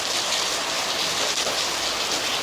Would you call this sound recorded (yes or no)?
yes